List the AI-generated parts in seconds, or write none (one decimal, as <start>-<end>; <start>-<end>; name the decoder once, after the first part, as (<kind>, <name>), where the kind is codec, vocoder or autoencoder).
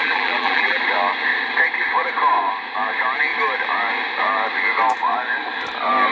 0.0-0.8 (vocoder, BigVGAN v2)